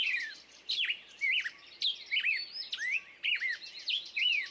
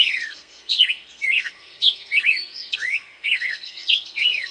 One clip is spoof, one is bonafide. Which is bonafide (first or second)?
first